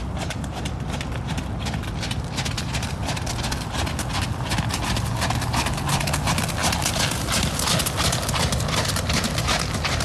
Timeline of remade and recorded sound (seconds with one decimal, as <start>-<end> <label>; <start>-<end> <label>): 0.0-10.0 recorded